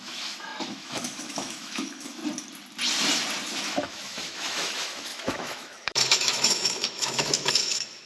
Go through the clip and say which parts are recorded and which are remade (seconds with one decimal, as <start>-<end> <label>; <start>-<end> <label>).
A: 0.0-2.2 remade; 2.2-3.5 recorded; 3.5-8.1 remade